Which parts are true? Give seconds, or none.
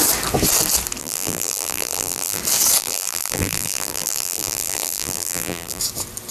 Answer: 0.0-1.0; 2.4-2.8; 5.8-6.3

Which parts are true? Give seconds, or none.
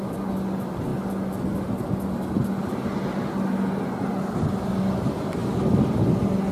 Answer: 0.9-4.8; 5.4-6.5